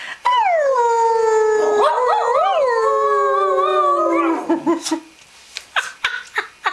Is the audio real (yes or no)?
yes